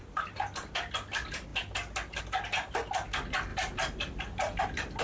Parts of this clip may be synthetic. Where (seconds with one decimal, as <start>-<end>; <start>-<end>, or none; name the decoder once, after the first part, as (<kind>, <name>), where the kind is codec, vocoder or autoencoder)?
none